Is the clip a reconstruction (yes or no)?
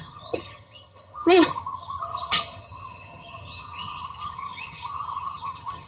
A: yes